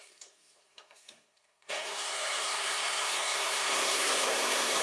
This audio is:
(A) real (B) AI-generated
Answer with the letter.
B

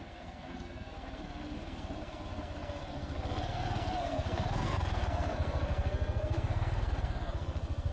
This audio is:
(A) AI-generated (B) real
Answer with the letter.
A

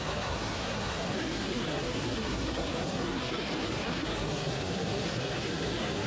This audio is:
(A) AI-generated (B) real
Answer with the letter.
A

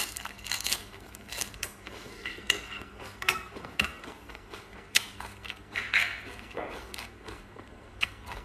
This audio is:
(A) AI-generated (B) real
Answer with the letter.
A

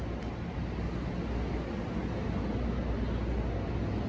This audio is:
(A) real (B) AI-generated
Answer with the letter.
A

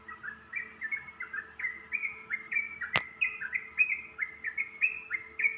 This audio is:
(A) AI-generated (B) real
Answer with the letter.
B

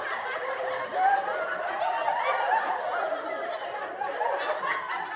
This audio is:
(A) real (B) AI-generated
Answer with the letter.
A